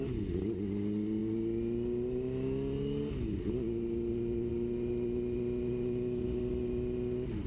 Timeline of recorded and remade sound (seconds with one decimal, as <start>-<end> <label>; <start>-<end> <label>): 0.0-7.5 recorded